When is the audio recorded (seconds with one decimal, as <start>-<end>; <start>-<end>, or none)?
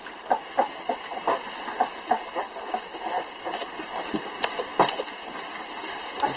0.0-6.4